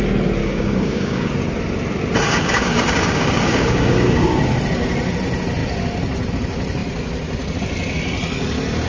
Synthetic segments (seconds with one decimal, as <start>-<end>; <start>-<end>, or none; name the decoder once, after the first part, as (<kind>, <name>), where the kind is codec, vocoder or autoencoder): 0.4-1.3 (codec, DAC); 2.3-4.4